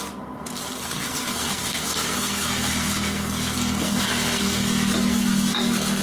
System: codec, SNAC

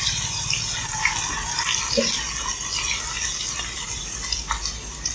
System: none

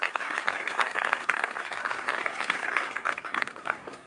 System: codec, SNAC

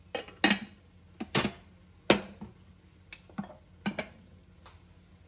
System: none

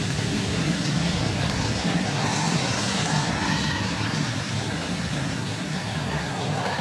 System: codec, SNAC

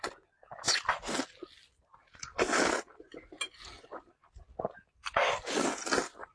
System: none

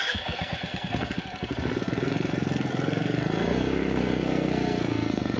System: codec, SNAC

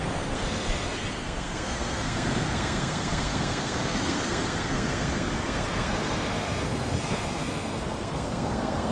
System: codec, SNAC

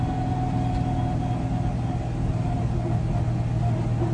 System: none